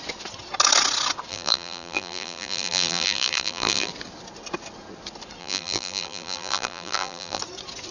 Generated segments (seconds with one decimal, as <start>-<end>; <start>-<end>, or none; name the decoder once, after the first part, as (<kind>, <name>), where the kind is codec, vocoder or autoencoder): 1.3-3.9 (vocoder, BigVGAN v2); 5.4-7.4